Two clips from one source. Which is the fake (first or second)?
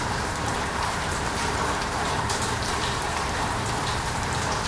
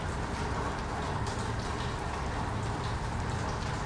first